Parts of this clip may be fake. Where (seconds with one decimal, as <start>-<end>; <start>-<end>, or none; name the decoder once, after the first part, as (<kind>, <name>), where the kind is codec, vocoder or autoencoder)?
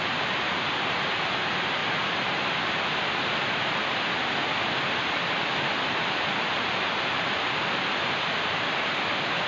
none